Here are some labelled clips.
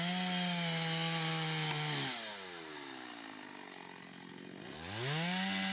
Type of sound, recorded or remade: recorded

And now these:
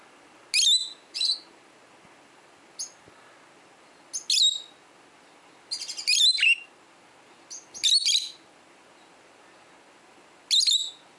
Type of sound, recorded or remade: recorded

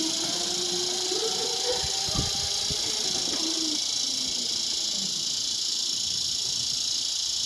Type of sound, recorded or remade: recorded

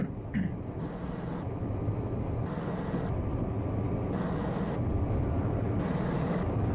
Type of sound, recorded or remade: recorded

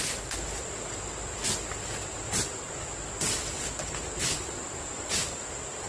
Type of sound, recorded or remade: recorded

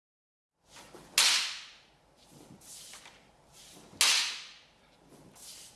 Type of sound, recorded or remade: recorded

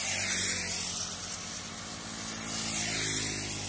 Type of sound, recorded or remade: recorded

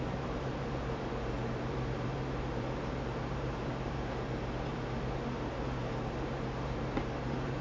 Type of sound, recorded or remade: remade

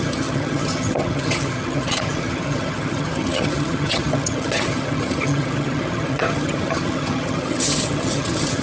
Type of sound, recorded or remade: remade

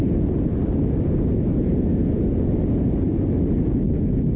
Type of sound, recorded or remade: recorded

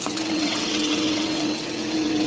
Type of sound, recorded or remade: remade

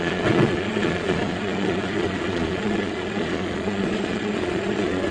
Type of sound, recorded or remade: remade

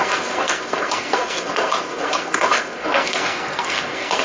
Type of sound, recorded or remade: remade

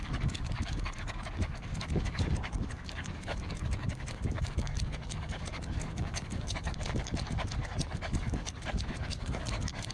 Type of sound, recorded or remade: remade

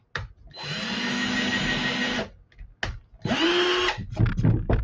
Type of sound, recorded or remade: recorded